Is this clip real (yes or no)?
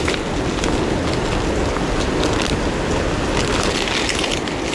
yes